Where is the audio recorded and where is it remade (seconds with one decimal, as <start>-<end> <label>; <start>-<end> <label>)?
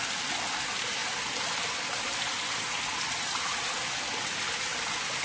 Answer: 0.0-5.2 recorded